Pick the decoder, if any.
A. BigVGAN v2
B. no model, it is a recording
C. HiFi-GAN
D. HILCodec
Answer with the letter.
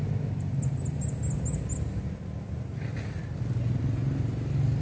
B